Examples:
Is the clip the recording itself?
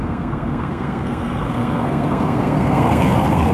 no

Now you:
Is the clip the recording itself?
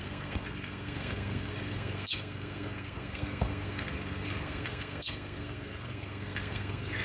no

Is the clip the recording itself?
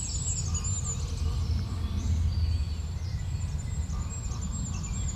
yes